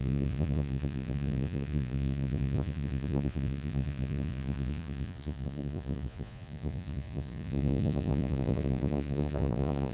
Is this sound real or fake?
fake